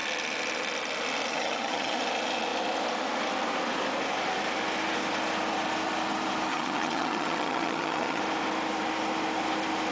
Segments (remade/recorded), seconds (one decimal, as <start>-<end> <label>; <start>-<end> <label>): 0.0-1.3 recorded; 1.3-2.0 remade; 2.0-6.5 recorded; 6.5-8.2 remade; 8.2-9.9 recorded